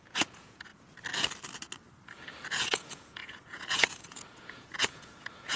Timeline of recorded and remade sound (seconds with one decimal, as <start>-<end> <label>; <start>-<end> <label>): 0.0-0.7 remade; 0.7-2.5 recorded; 2.5-5.6 remade